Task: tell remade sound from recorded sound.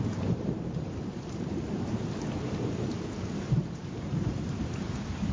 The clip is remade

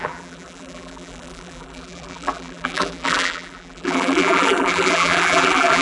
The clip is remade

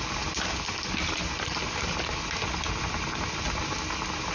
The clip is recorded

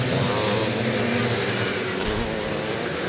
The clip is recorded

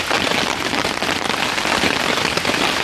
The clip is recorded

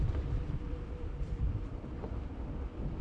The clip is remade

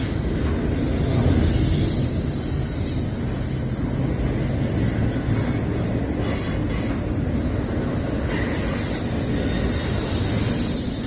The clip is recorded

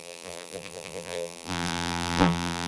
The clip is remade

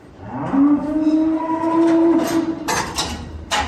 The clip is remade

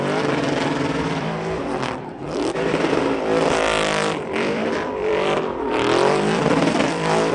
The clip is remade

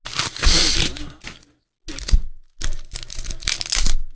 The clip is recorded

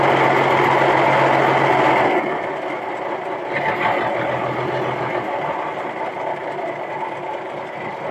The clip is recorded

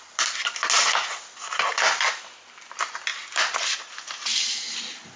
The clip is recorded